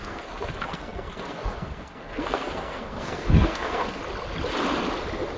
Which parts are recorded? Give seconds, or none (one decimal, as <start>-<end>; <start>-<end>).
4.0-5.4